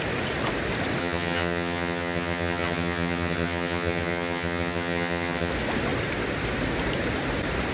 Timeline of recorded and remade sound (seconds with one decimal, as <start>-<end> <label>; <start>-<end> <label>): 0.0-1.0 recorded; 1.0-5.5 remade; 5.5-7.7 recorded